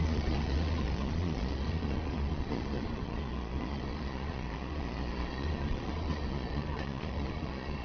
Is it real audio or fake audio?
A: fake